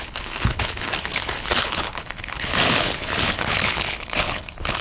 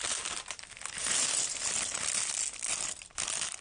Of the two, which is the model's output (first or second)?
first